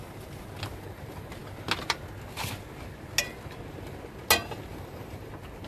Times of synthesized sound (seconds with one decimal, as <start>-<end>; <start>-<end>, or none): 4.7-5.3